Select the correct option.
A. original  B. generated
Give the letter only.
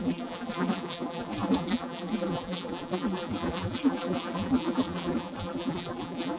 B